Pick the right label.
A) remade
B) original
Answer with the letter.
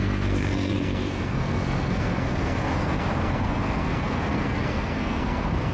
A